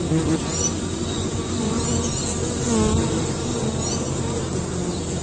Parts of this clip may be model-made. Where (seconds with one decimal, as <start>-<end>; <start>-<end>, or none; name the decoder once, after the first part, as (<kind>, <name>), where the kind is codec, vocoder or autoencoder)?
1.0-1.8 (vocoder, Vocos)

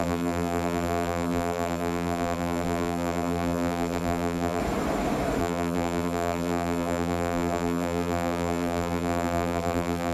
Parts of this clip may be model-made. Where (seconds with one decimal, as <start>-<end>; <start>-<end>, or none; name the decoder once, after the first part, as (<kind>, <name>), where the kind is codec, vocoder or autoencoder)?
0.0-4.6 (vocoder, BigVGAN v2); 5.4-10.1

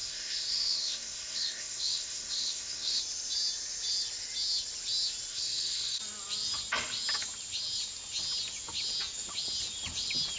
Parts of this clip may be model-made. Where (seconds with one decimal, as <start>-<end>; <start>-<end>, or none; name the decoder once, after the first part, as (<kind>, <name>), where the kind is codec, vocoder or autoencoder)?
0.0-3.0 (codec, SNAC); 5.3-6.0

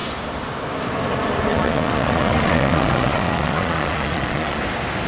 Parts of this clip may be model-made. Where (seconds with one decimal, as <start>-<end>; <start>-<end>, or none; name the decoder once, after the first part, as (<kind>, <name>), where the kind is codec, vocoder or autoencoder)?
1.5-4.6 (vocoder, Vocos)

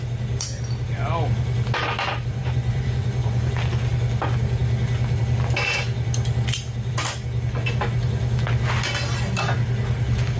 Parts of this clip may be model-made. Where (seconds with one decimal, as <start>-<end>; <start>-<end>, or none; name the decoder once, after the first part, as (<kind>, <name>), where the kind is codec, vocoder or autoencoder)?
2.4-3.5 (vocoder, Vocos)